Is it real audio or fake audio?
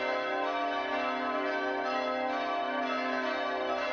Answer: real